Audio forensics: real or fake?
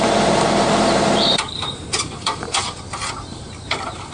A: fake